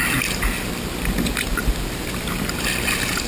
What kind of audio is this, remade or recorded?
recorded